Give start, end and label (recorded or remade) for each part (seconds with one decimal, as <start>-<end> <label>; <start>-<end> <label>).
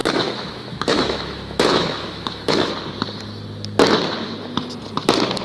0.0-2.7 remade; 2.7-5.4 recorded